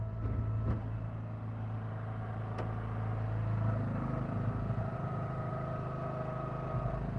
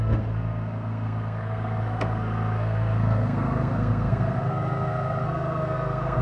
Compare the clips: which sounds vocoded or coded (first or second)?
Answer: second